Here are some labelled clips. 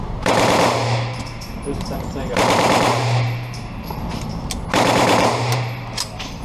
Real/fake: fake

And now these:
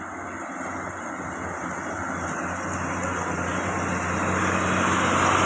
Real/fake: real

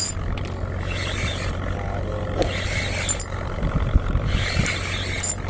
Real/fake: real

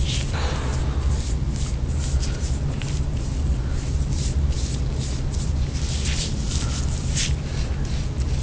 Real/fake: real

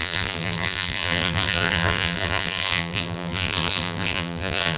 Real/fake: fake